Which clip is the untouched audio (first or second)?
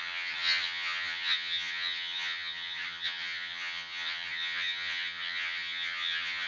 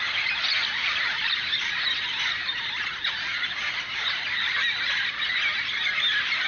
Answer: second